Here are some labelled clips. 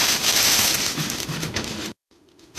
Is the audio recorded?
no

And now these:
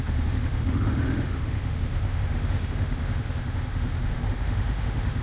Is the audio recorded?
no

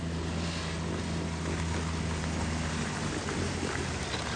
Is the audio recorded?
yes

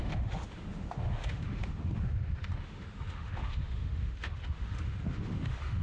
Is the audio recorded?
no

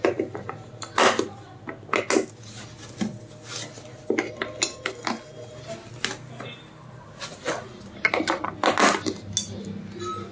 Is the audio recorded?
yes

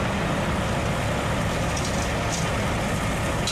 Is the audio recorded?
yes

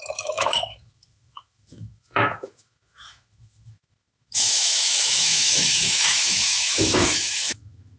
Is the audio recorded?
no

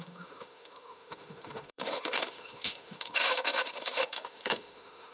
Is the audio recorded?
no